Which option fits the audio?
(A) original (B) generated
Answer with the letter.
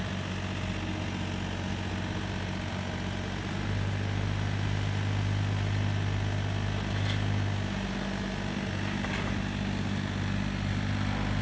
A